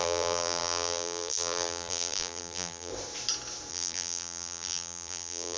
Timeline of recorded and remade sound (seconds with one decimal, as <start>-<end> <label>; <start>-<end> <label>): 0.0-2.9 remade; 2.9-3.7 recorded; 3.7-5.6 remade